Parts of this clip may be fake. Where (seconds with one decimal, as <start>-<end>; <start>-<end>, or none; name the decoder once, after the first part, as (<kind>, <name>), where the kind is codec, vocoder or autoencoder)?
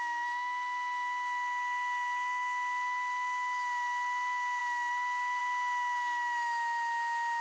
none